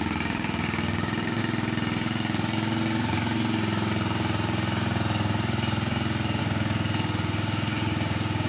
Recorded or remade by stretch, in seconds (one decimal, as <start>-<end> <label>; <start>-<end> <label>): 0.0-1.4 remade; 1.4-6.4 recorded; 6.4-8.5 remade